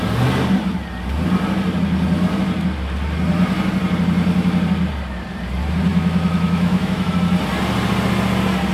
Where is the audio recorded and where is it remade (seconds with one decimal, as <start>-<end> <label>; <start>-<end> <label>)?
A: 0.0-5.9 recorded; 5.9-7.1 remade; 7.1-8.7 recorded